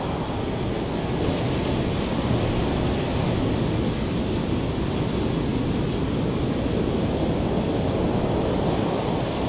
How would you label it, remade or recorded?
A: recorded